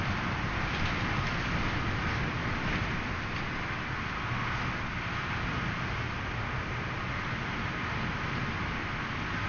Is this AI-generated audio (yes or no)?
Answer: no